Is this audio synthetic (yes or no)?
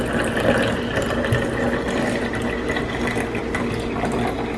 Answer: no